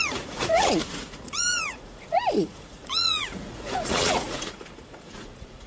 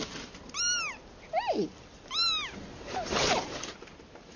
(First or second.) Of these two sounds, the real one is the second